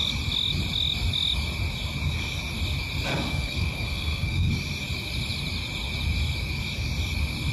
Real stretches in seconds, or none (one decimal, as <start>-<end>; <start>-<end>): 0.0-3.1; 4.5-7.5

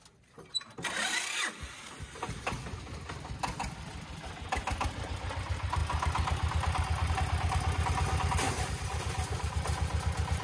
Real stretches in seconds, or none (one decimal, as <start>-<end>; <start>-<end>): 0.0-10.4

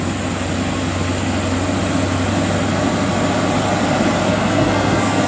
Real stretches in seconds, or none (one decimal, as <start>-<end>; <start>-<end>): 0.0-4.3

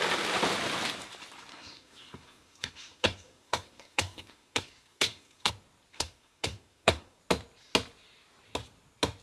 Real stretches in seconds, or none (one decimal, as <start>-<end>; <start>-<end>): 0.0-1.5; 5.5-5.9; 7.2-9.2

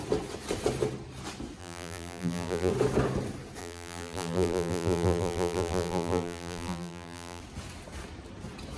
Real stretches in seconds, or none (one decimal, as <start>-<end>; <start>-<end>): 0.0-1.6; 2.7-3.6; 7.4-8.8